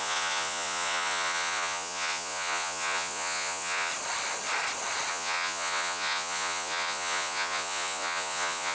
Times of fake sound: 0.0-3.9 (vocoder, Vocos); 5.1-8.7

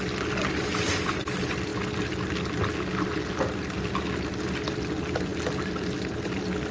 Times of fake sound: none

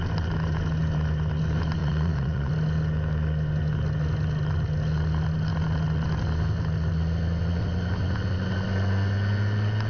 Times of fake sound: 1.8-2.5 (vocoder, Vocos)

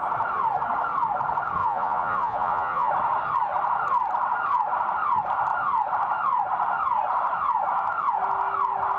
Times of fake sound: 1.6-2.9 (vocoder, Vocos)

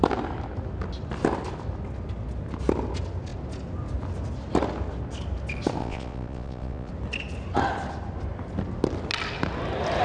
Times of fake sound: 5.8-6.9 (vocoder, Vocos)